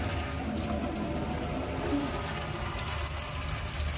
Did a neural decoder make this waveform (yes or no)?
no